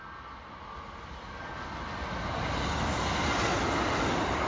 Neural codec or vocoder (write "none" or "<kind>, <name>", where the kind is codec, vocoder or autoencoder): none